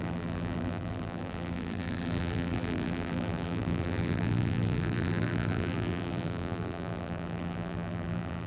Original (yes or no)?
no